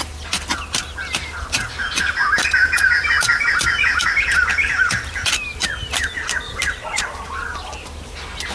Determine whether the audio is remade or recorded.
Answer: recorded